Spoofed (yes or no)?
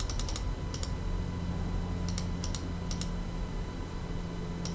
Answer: no